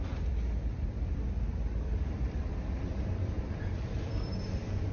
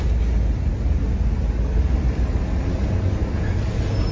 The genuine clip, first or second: second